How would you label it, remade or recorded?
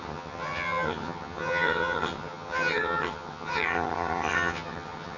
remade